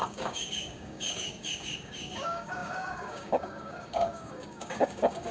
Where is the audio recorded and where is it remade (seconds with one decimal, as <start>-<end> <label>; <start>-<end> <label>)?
0.0-5.3 remade